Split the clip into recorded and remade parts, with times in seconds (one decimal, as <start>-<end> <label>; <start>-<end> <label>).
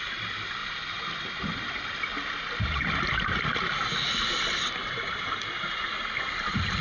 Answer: 0.0-0.6 remade; 0.6-4.7 recorded; 4.7-6.8 remade